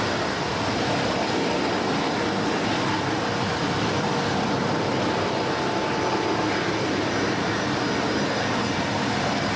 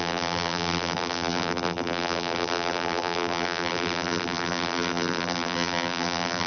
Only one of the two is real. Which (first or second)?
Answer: first